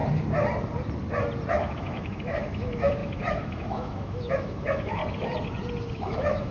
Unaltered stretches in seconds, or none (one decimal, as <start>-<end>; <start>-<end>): 0.0-1.5; 5.0-5.9